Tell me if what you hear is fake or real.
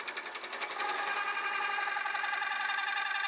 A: real